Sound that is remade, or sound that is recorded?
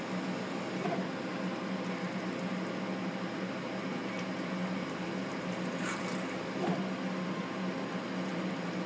recorded